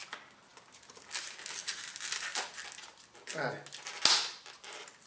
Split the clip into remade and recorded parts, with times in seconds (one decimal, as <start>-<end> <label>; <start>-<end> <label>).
0.0-4.2 recorded; 4.2-5.1 remade